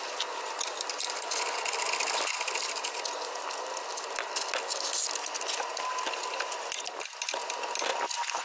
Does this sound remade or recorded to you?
recorded